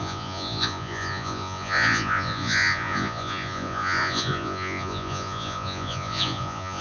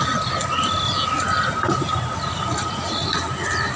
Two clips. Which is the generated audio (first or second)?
first